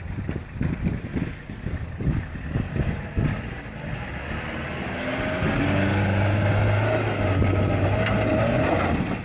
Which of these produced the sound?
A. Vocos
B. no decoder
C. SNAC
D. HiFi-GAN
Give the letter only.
B